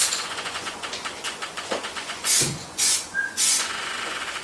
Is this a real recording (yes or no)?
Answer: no